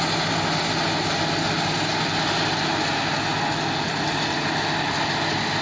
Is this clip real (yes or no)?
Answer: yes